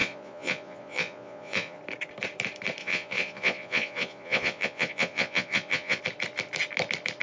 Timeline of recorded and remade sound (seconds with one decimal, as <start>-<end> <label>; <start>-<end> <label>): 0.0-1.8 remade; 1.8-2.8 recorded; 2.8-6.0 remade; 6.0-7.2 recorded